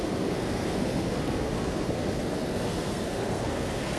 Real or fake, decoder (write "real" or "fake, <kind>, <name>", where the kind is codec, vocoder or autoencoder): fake, codec, SNAC